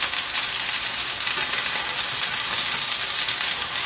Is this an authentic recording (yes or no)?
yes